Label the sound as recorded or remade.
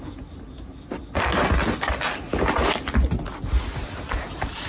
recorded